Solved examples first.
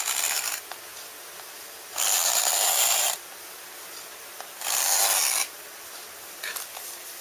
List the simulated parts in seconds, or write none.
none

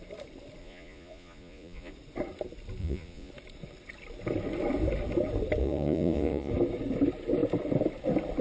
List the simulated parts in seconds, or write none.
0.6-1.9 (vocoder, Vocos); 2.8-3.3; 5.6-6.5

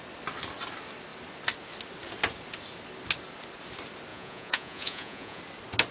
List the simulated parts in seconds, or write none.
4.1-5.4 (vocoder, Vocos)

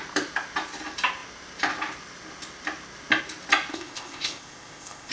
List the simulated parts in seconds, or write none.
3.7-5.1 (codec, ZipCodec)

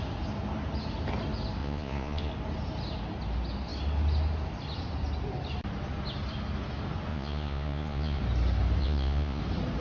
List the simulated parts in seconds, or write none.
1.6-2.3 (vocoder, Vocos); 7.1-8.2; 8.8-9.4

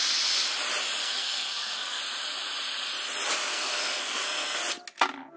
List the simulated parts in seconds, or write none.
1.0-2.0 (codec, SNAC); 3.5-4.6